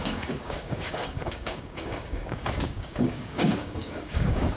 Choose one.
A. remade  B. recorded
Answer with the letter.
A